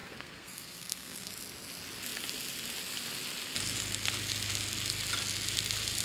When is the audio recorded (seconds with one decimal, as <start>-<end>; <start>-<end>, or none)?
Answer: 1.3-6.0